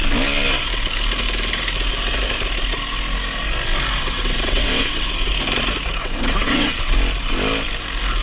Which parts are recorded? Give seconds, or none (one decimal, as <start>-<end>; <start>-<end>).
0.0-4.0; 5.3-6.0; 6.9-8.2

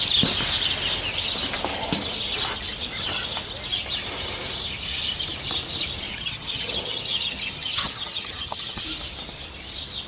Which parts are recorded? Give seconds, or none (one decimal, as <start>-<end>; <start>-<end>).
0.0-6.1; 8.8-10.1

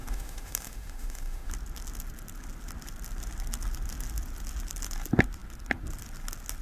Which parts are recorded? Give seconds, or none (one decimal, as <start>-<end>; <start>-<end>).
1.5-6.6

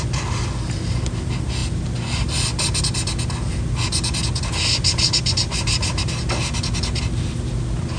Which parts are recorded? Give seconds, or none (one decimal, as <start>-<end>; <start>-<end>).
0.0-8.0

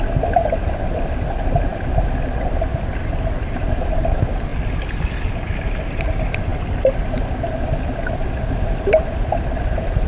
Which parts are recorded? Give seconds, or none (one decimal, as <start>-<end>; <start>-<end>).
0.0-10.1

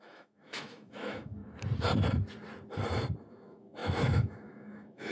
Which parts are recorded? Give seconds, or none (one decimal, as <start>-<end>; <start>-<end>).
1.4-3.3